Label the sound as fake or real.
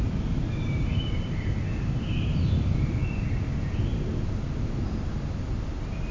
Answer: real